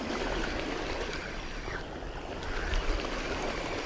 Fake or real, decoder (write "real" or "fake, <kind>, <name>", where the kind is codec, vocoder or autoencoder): real